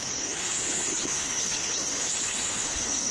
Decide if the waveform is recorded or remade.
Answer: remade